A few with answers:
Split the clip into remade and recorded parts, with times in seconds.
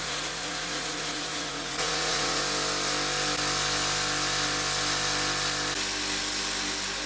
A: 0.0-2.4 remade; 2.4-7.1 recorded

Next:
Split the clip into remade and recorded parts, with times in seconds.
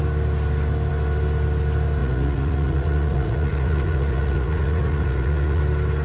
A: 0.0-2.0 recorded; 2.0-5.6 remade; 5.6-6.0 recorded